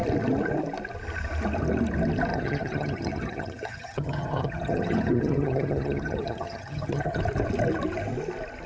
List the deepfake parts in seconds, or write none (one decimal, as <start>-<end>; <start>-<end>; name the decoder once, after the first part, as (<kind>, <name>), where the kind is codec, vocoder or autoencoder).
2.3-7.2 (vocoder, HiFi-GAN)